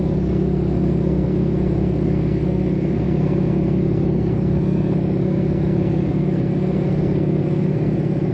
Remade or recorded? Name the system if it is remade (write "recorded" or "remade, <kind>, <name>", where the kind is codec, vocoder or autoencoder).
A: remade, codec, SNAC